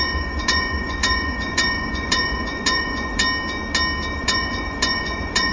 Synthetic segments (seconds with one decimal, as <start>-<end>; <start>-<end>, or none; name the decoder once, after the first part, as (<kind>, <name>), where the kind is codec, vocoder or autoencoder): 0.0-3.2 (vocoder, Vocos); 4.2-5.5